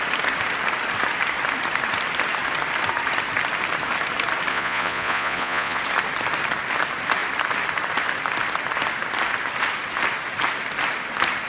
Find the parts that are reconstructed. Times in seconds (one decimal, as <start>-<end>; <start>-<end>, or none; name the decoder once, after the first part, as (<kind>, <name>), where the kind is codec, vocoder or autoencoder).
4.5-5.8 (vocoder, Vocos)